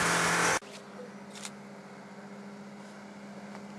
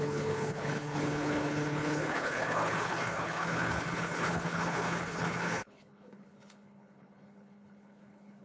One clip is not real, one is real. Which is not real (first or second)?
second